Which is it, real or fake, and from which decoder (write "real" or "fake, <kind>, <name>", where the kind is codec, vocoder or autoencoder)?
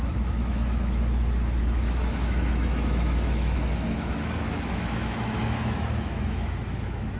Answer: fake, autoencoder, DAC-VAE